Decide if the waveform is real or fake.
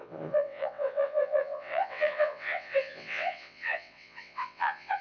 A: fake